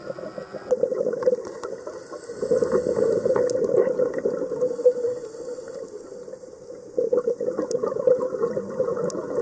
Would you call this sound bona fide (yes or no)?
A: yes